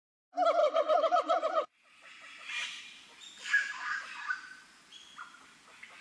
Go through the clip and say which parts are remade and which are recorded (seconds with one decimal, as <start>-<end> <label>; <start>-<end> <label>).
0.0-0.6 recorded; 0.6-2.8 remade; 2.8-3.7 recorded; 3.7-4.6 remade; 4.6-6.0 recorded

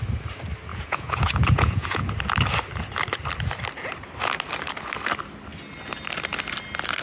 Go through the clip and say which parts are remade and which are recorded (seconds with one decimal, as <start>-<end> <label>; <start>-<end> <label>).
0.0-0.7 recorded; 0.7-2.1 remade; 2.1-7.0 recorded

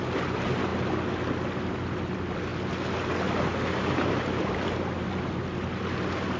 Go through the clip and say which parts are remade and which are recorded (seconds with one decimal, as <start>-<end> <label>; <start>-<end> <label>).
0.0-6.4 recorded

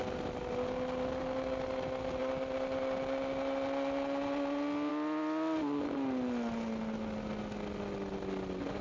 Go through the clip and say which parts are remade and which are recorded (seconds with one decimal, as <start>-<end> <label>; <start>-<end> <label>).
0.0-8.8 recorded

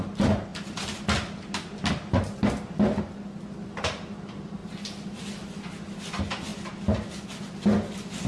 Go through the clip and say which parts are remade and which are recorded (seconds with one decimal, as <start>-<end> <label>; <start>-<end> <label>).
0.0-8.3 recorded

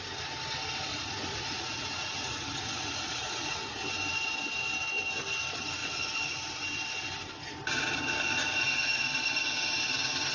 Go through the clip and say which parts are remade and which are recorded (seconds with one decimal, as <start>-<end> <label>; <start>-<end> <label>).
0.0-0.9 recorded; 0.9-3.8 remade; 3.8-10.3 recorded

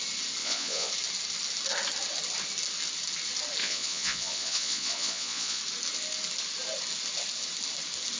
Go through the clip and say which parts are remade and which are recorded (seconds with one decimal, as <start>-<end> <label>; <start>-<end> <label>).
0.0-0.4 recorded; 0.4-0.9 remade; 0.9-3.6 recorded; 3.6-5.6 remade; 5.6-8.2 recorded